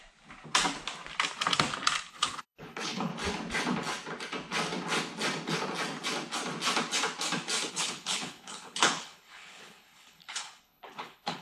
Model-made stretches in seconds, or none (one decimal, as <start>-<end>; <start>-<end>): 2.1-3.1; 7.7-11.4